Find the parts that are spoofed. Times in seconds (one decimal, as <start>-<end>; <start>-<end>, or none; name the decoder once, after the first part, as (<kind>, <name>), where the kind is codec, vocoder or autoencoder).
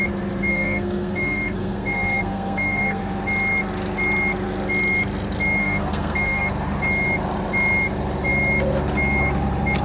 0.5-3.0 (codec, SNAC); 5.6-6.5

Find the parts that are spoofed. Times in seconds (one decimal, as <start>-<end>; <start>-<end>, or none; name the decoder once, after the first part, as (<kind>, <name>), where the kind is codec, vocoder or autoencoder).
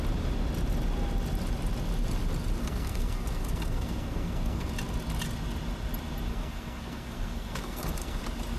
2.6-4.7 (codec, SNAC); 6.3-8.2